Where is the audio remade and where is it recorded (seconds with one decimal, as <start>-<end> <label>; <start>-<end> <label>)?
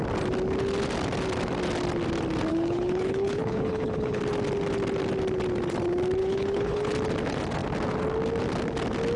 0.0-2.5 recorded; 2.5-4.2 remade; 4.2-6.2 recorded; 6.2-6.9 remade; 6.9-9.2 recorded